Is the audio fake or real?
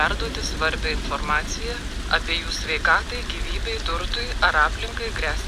real